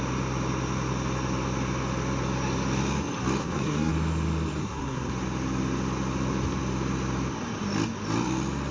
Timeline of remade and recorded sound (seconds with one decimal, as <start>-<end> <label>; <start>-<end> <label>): 0.0-3.4 recorded; 3.4-3.9 remade; 3.9-4.6 recorded; 4.6-5.1 remade; 5.1-8.7 recorded